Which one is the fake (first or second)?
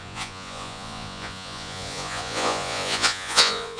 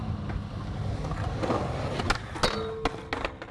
first